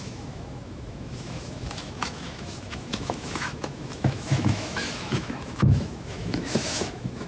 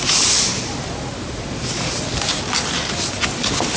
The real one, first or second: second